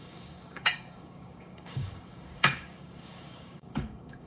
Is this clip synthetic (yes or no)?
yes